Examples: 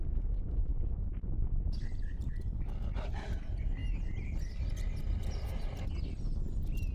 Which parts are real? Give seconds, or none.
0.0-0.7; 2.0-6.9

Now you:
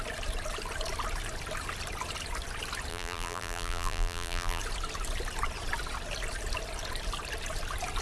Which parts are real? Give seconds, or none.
0.0-2.9; 4.6-8.0